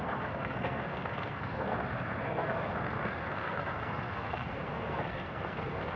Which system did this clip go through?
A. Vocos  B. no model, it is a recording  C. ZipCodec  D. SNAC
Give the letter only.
D